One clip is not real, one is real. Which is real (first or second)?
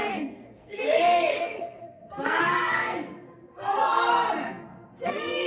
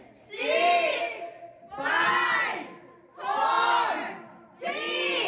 second